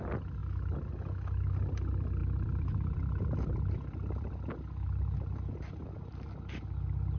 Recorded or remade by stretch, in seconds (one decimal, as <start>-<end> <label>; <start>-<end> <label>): 0.0-2.2 recorded; 2.2-4.2 remade; 4.2-7.2 recorded